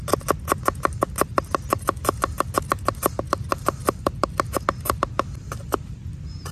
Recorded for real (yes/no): yes